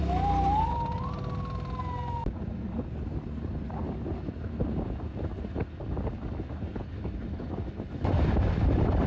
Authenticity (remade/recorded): recorded